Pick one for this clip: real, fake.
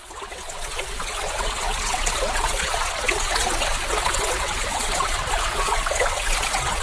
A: fake